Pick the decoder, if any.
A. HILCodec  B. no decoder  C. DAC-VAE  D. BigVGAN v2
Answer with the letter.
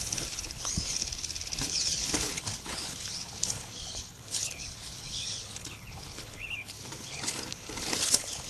A